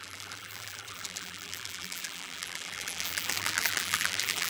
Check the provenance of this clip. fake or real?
fake